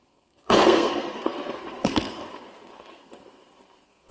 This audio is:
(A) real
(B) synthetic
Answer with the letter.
B